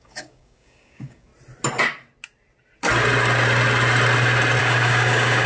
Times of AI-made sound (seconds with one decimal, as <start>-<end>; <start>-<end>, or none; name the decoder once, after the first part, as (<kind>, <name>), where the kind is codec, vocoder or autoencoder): 0.0-1.3 (codec, DAC); 4.6-5.5